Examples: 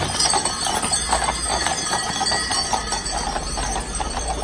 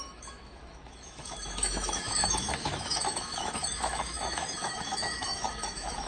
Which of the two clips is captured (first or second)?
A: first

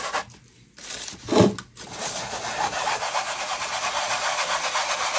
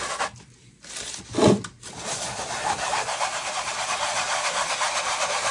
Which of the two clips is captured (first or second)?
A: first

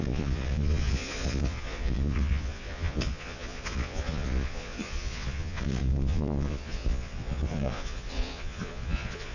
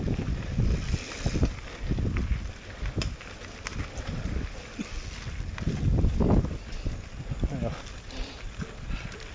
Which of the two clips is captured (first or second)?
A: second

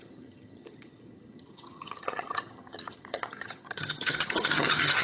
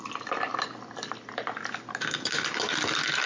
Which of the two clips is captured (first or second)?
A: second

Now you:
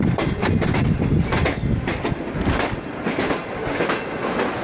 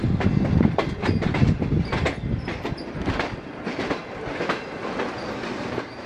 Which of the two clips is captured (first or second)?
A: first